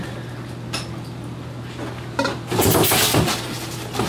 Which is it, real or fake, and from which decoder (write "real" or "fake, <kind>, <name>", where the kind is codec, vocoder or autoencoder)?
real